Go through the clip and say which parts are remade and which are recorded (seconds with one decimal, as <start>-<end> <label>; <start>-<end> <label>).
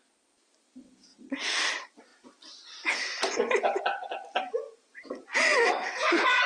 0.0-1.1 recorded; 1.1-1.7 remade; 1.7-5.3 recorded; 5.3-6.0 remade; 6.0-6.5 recorded